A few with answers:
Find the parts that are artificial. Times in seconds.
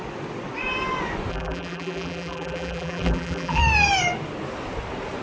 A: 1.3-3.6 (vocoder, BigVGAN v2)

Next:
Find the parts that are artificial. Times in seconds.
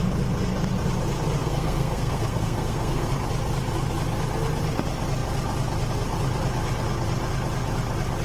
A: 1.4-3.1 (codec, SNAC)